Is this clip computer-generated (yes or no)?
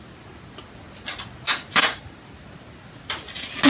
no